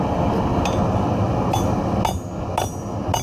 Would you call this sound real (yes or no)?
yes